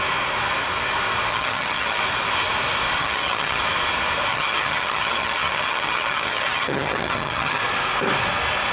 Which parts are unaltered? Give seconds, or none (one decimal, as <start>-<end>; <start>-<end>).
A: 0.0-1.3; 2.0-3.0; 3.6-4.3; 7.6-8.7